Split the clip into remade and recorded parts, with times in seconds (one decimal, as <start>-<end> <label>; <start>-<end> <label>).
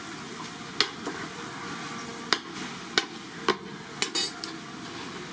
0.0-5.3 recorded